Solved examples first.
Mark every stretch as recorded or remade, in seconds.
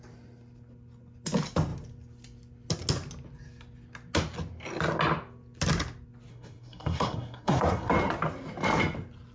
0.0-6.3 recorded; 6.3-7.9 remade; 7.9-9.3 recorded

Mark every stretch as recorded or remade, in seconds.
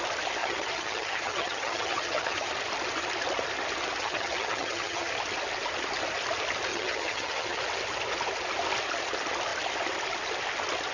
0.0-0.4 recorded; 0.4-2.5 remade; 2.5-4.0 recorded; 4.0-5.1 remade; 5.1-6.7 recorded; 6.7-7.6 remade; 7.6-10.9 recorded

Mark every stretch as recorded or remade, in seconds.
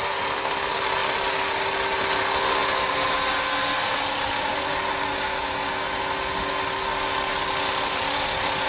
0.0-8.7 recorded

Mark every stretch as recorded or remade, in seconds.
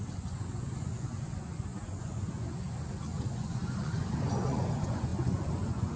0.0-6.0 remade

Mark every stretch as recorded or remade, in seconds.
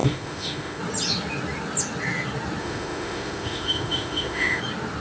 0.0-0.8 remade; 0.8-2.6 recorded; 2.6-4.6 remade; 4.6-5.0 recorded